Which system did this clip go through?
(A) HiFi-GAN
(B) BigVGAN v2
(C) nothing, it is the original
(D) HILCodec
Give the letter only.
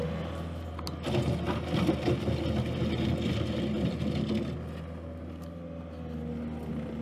C